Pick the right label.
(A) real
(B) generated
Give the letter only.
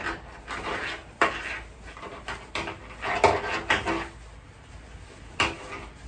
A